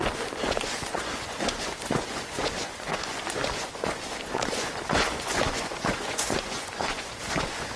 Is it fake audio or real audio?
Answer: fake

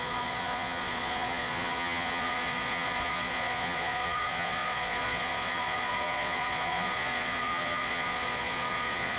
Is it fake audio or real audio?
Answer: fake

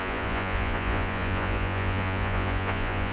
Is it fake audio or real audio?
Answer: fake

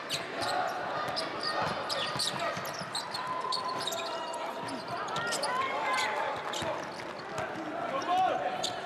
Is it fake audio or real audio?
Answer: real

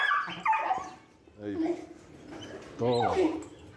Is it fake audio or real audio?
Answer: real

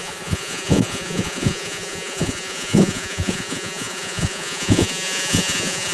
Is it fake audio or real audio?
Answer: fake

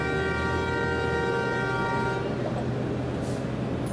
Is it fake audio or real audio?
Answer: real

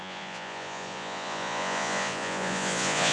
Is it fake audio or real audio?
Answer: fake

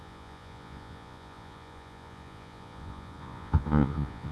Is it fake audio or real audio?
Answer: fake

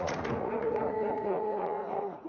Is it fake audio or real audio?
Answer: fake